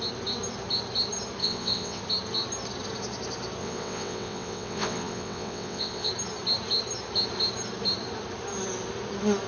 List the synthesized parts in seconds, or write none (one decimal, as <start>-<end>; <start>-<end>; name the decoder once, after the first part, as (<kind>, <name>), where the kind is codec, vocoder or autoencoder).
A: 1.4-2.0 (vocoder, WaveNeXt); 3.6-6.1